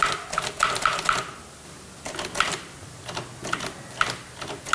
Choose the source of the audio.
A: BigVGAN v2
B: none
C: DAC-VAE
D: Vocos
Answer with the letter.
B